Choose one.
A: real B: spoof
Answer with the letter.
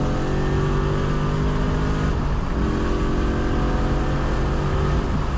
A